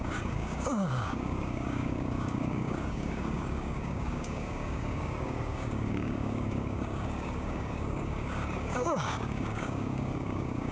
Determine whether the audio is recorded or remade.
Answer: remade